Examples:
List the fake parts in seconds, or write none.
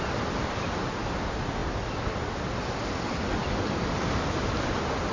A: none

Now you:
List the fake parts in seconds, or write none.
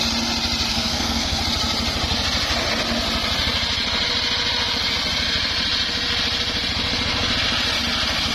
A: 0.7-1.4 (codec, SNAC)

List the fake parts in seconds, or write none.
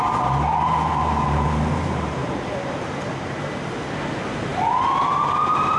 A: 0.9-3.6 (vocoder, BigVGAN v2)